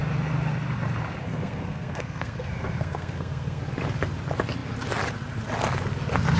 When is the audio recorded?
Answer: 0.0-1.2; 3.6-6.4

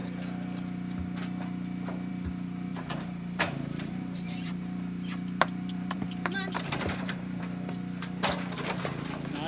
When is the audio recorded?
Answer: 0.0-2.7; 7.4-9.5

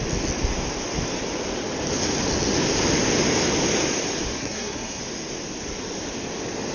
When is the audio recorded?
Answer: 0.0-4.4; 5.0-6.7

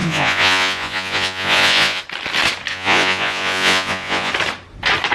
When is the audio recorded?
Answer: 2.0-2.7; 4.3-5.1

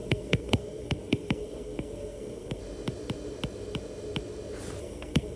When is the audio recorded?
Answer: 2.6-4.8

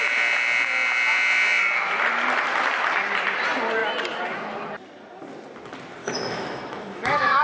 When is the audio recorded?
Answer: 0.0-6.0

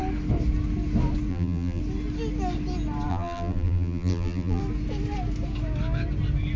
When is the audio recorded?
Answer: 0.0-1.3; 1.8-3.1; 4.6-6.6

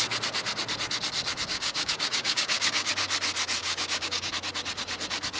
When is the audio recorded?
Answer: 0.0-1.5; 2.9-3.6; 4.3-5.4